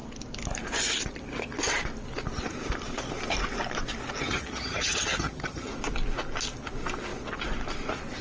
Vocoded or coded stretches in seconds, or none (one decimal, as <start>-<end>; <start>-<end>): 4.2-5.7